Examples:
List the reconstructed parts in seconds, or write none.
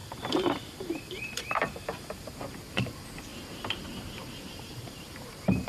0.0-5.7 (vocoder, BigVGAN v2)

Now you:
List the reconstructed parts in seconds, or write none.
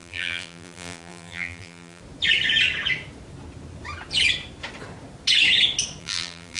0.0-2.0 (vocoder, BigVGAN v2); 6.0-6.6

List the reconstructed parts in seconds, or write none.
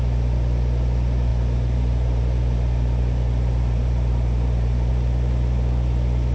1.3-4.9 (vocoder, BigVGAN v2)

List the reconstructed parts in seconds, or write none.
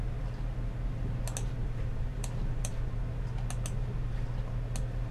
1.6-2.7 (vocoder, BigVGAN v2)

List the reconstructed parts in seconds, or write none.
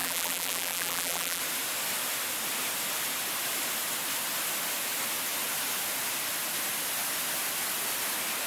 0.0-1.4 (vocoder, BigVGAN v2)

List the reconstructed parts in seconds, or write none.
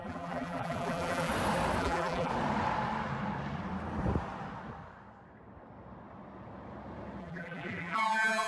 0.0-1.3 (vocoder, BigVGAN v2); 1.8-2.3; 7.2-8.5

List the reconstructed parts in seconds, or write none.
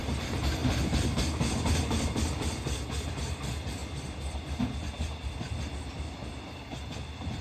0.6-1.3 (vocoder, BigVGAN v2)